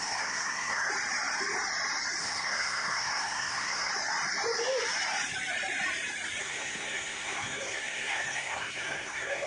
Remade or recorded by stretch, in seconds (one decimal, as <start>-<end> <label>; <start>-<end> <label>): 0.0-0.9 remade; 0.9-2.2 recorded; 2.2-3.9 remade; 3.9-6.4 recorded; 6.4-9.5 remade